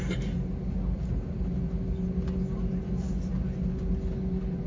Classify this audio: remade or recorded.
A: recorded